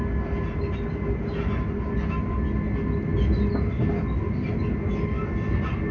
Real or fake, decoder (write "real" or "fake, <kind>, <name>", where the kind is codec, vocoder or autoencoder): real